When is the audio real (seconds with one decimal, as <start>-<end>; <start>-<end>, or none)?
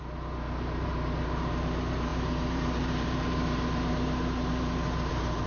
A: none